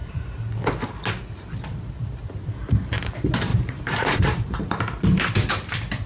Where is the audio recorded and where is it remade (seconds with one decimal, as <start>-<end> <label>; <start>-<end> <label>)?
0.0-0.5 remade; 0.5-3.5 recorded; 3.5-4.6 remade; 4.6-6.1 recorded